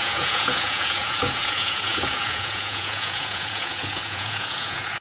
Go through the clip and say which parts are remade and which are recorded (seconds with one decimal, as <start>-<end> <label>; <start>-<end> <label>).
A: 0.0-5.0 remade